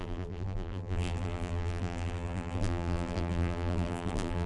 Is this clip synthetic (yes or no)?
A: yes